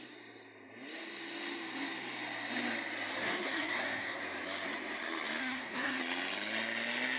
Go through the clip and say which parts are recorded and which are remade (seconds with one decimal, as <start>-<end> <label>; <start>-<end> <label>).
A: 0.0-3.2 recorded; 3.2-4.2 remade; 4.2-5.4 recorded; 5.4-6.0 remade; 6.0-7.2 recorded